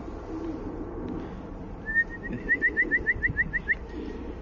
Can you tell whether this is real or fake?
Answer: real